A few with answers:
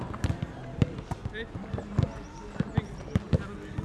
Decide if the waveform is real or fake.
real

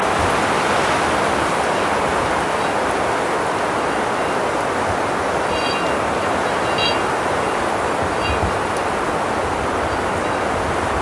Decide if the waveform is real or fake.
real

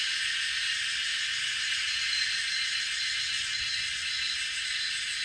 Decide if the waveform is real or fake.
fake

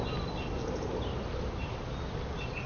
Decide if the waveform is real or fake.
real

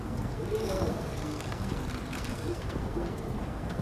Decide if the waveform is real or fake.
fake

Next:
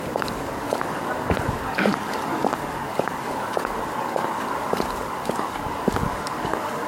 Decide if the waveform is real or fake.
fake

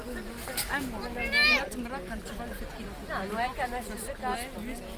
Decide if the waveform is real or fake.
real